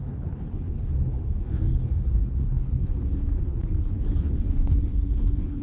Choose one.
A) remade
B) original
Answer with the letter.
A